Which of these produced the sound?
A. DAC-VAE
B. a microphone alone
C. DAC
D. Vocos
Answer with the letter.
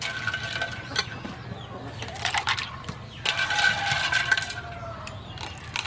B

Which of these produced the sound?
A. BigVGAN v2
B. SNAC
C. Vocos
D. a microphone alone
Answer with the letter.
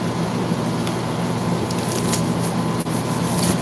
D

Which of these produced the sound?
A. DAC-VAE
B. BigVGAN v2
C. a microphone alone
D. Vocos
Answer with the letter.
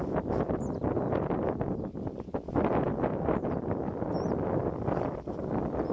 C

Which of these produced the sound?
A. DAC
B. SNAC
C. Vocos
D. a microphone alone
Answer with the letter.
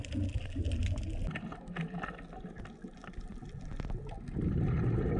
D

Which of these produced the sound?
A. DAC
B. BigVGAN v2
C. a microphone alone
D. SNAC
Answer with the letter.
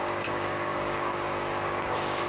A